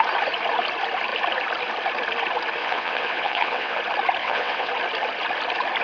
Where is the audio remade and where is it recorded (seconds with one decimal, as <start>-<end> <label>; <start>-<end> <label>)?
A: 0.0-2.6 recorded; 2.6-3.8 remade; 3.8-4.2 recorded; 4.2-4.7 remade; 4.7-5.8 recorded